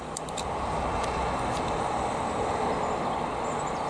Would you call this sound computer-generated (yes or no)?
no